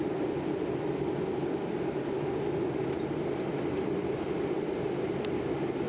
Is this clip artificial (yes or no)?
no